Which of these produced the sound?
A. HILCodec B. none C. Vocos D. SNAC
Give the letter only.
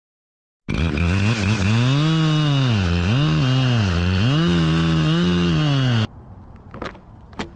B